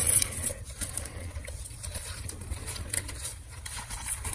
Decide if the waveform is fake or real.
fake